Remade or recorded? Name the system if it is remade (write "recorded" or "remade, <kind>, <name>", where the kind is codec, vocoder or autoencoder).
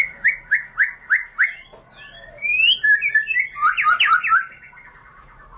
recorded